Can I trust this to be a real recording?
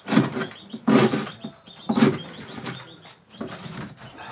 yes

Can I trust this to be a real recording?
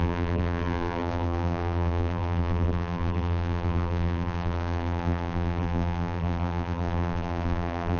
no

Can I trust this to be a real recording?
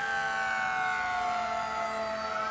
yes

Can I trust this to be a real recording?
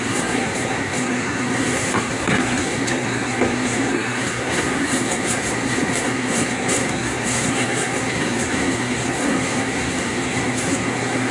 no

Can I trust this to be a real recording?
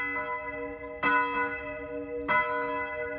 yes